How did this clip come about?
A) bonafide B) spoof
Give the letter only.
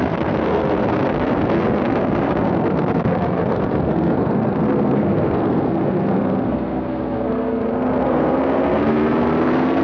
B